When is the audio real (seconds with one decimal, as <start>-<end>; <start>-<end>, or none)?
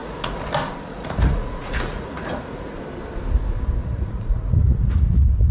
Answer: 0.5-0.9; 2.8-3.8